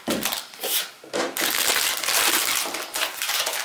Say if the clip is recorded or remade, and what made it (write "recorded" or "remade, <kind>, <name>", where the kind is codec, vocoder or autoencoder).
recorded